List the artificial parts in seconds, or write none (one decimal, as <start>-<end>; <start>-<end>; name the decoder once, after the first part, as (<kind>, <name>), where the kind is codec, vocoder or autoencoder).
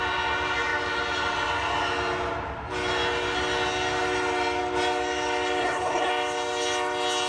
5.6-6.1 (codec, HILCodec)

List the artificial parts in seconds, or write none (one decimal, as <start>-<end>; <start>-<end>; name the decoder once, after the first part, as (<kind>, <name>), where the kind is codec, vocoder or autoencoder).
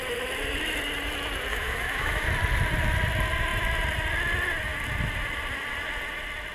1.5-2.3 (autoencoder, DAC-VAE)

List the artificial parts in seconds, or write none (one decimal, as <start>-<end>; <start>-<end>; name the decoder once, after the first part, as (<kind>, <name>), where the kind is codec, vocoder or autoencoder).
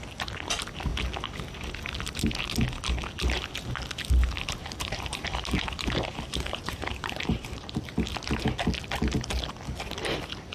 4.6-7.8 (vocoder, BigVGAN v2)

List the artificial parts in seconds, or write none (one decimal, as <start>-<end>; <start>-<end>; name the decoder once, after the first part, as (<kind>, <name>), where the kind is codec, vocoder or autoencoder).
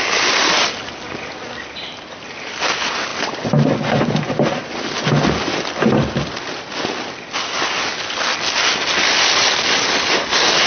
none